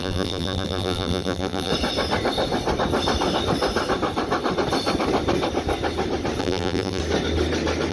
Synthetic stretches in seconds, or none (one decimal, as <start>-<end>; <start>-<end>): 0.0-1.7; 6.4-7.0